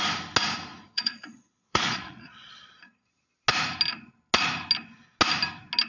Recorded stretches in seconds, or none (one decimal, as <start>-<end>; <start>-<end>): 0.0-0.7; 3.2-5.9